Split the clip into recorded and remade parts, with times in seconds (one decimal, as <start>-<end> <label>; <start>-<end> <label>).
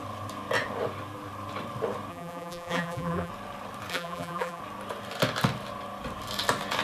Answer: 0.0-2.1 recorded; 2.1-3.3 remade; 3.3-3.9 recorded; 3.9-4.6 remade; 4.6-6.8 recorded